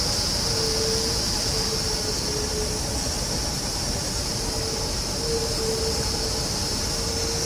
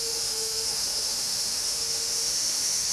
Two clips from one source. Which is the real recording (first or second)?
first